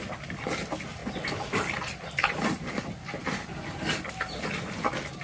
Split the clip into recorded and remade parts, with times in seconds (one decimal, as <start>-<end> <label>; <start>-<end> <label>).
0.0-5.2 recorded